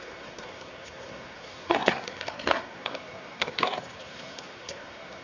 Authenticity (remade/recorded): remade